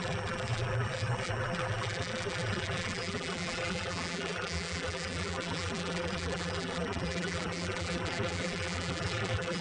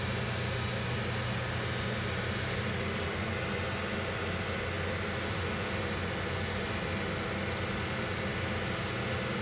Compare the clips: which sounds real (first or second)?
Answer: second